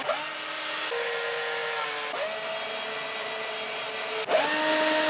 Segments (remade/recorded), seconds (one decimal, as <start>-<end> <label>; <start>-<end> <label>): 0.0-5.1 recorded